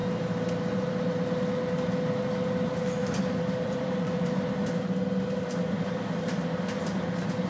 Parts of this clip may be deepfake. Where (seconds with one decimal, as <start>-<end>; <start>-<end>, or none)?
3.0-4.5